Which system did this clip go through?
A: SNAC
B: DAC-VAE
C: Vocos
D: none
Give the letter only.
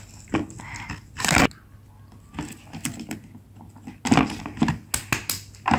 D